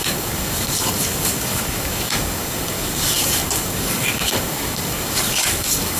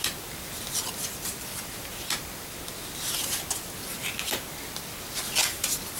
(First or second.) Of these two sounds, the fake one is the first